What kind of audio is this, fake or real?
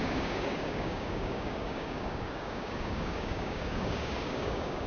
fake